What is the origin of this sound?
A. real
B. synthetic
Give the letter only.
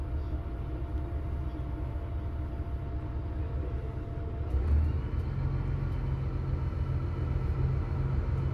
A